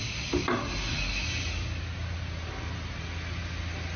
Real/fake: real